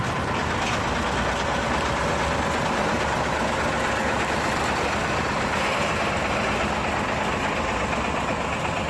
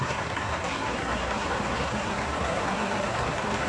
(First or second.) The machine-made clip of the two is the second